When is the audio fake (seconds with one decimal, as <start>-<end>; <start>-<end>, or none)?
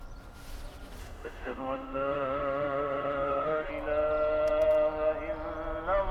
1.0-3.7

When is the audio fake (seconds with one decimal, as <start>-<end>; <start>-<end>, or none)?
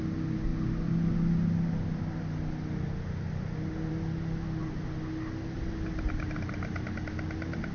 none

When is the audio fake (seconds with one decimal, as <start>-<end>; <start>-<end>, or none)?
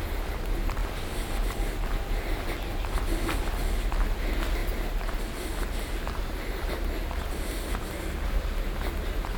none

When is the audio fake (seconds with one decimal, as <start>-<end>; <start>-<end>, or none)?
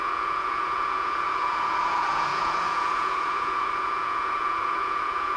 0.0-5.4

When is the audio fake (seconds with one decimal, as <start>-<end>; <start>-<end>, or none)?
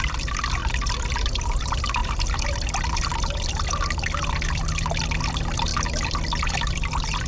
0.0-0.6; 1.1-2.0; 5.3-5.7; 6.4-7.3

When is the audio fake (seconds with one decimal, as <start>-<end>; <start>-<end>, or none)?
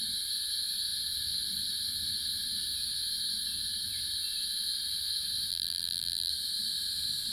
5.5-6.3